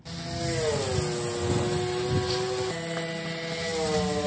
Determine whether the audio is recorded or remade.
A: recorded